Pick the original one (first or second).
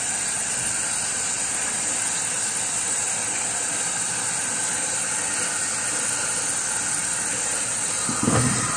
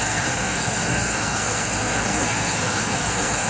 first